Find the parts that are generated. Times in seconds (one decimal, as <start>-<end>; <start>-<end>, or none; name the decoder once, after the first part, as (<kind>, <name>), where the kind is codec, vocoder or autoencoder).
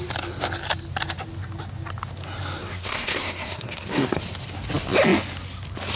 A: 2.6-4.2 (codec, SNAC)